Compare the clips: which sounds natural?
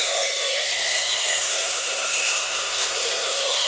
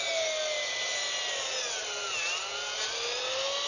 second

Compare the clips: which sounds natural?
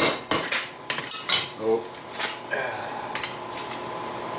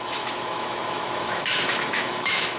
first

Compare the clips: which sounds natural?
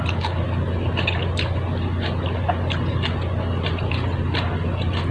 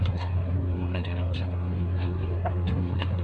first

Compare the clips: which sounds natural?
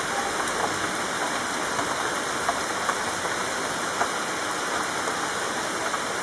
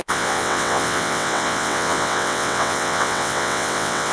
first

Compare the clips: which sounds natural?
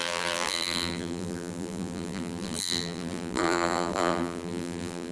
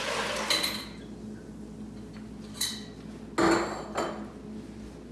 second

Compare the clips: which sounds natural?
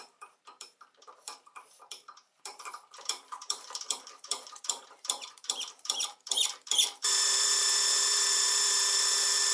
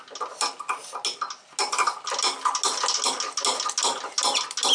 second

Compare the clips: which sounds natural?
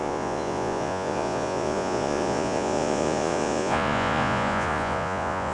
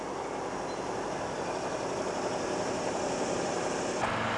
second